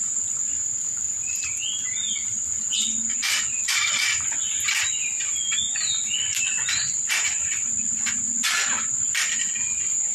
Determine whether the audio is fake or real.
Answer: real